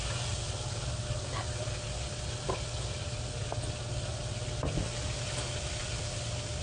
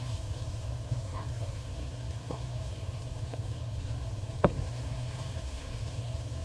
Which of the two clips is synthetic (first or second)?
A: second